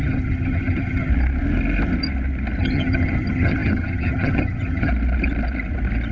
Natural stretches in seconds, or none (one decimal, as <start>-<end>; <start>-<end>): 1.1-2.6; 4.9-6.1